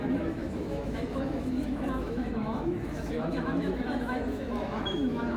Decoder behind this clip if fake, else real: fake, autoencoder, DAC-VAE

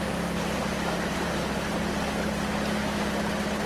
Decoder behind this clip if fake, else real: real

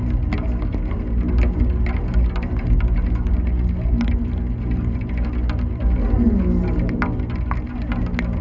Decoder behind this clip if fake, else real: real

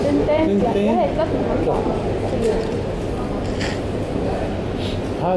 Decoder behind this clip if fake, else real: real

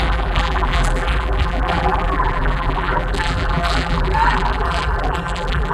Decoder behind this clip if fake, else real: fake, vocoder, BigVGAN v2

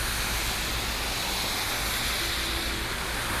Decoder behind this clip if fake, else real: real